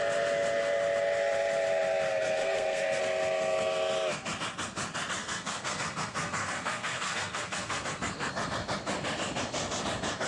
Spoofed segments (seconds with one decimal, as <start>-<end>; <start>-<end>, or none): 2.1-3.0; 5.2-8.3